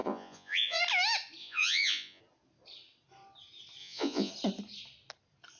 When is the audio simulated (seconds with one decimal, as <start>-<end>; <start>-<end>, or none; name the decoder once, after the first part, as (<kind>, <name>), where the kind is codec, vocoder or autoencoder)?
0.0-0.8 (vocoder, Vocos); 1.4-2.2; 3.8-4.3